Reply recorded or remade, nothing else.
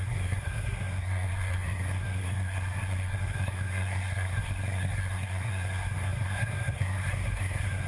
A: remade